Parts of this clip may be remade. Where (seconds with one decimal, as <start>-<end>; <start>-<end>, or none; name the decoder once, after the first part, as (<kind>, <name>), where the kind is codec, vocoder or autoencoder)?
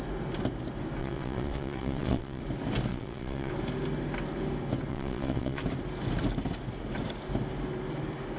1.0-2.4 (vocoder, WaveNeXt); 2.9-3.5; 4.9-5.6